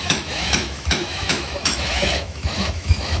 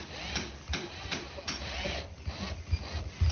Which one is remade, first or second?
first